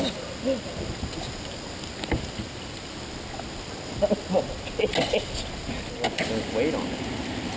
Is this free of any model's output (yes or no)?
yes